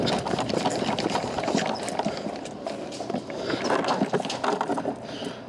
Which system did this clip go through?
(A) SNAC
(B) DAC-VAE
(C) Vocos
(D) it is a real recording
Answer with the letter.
D